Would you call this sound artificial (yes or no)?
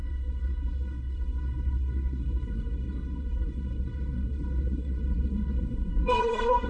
yes